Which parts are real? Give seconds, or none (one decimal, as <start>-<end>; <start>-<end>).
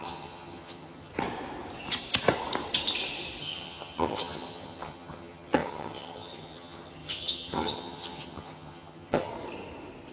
1.1-3.4; 9.3-10.1